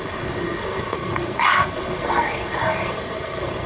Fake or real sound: fake